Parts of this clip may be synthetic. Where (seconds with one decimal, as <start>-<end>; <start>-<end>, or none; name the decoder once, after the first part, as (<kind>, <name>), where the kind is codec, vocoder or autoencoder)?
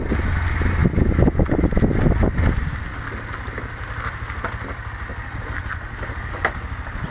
none